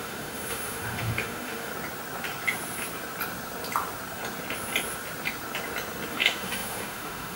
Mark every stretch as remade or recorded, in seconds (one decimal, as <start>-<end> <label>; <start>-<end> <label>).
0.0-1.7 remade; 1.7-6.1 recorded; 6.1-7.4 remade